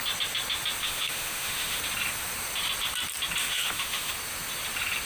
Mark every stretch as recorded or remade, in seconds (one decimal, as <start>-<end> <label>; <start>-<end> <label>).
0.0-0.8 recorded; 0.8-1.8 remade; 1.8-3.4 recorded; 3.4-4.1 remade; 4.1-5.1 recorded